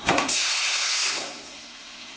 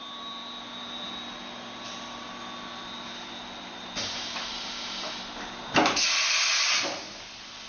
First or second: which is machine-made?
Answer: first